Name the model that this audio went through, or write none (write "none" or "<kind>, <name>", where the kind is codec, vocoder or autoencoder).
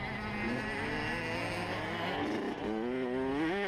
none